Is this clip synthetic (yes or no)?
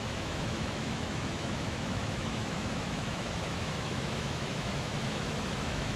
yes